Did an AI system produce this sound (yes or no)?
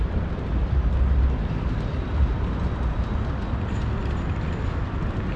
no